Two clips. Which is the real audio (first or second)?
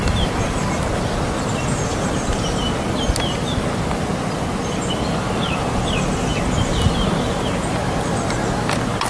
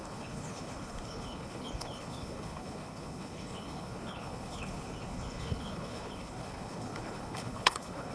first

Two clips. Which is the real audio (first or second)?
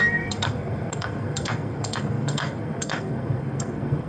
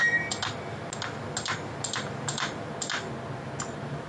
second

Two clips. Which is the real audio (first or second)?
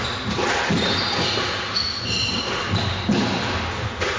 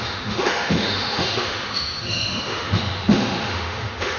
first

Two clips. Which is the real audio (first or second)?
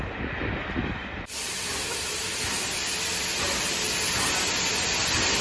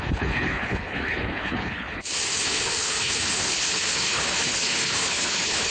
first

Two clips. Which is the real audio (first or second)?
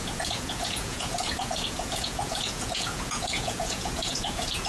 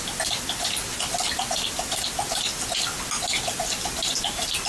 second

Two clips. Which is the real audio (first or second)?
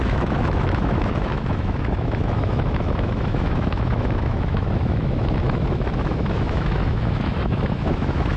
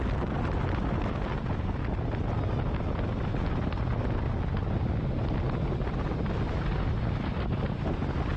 second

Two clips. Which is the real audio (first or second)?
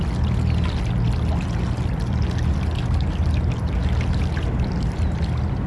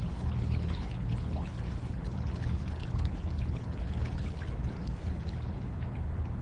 first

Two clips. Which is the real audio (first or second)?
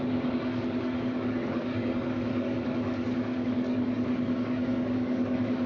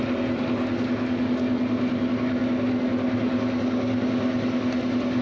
second